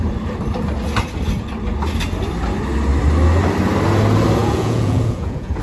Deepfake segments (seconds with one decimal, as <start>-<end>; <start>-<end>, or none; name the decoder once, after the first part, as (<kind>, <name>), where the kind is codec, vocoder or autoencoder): 4.4-5.6 (vocoder, Vocos)